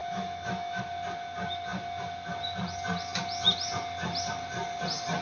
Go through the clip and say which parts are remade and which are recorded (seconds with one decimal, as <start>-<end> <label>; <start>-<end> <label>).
0.0-0.8 remade; 0.8-5.2 recorded